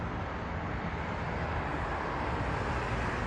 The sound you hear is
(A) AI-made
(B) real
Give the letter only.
B